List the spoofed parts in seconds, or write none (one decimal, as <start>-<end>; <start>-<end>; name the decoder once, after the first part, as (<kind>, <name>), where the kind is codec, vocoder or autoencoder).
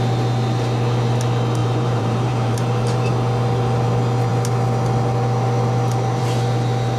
1.6-3.1 (vocoder, BigVGAN v2)